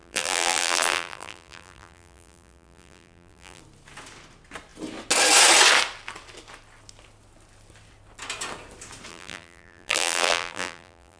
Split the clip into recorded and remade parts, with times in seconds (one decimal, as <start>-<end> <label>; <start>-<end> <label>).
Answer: 0.0-3.6 remade; 3.6-9.1 recorded; 9.1-11.2 remade